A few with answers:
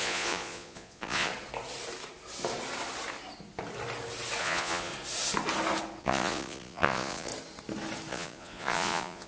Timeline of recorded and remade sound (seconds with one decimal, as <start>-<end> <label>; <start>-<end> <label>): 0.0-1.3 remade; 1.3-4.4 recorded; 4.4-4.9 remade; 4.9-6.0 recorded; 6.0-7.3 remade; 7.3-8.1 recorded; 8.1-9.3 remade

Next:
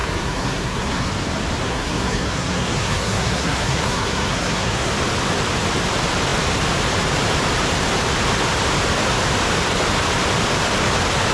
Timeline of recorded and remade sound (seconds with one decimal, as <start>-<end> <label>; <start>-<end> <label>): 0.0-1.1 remade; 1.1-1.6 recorded; 1.6-4.9 remade; 4.9-11.3 recorded

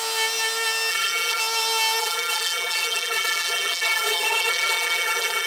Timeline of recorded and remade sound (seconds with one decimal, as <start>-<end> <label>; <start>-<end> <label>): 0.0-0.9 recorded; 0.9-1.4 remade; 1.4-2.0 recorded; 2.0-5.5 remade